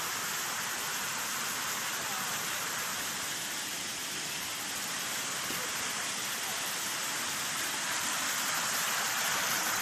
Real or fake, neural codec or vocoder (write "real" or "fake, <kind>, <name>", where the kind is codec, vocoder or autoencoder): real